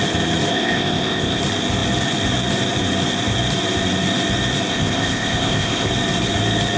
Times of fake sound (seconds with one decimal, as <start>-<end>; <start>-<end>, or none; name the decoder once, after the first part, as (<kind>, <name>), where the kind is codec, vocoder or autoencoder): 0.5-1.4 (codec, ZipCodec); 4.7-5.9